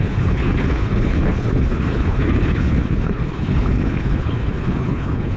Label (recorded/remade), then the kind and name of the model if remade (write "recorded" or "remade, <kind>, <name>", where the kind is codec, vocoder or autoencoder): remade, codec, HILCodec